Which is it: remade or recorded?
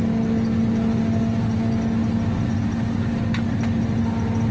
recorded